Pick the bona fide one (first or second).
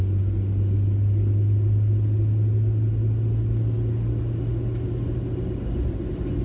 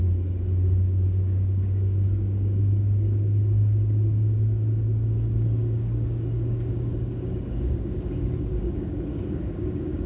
first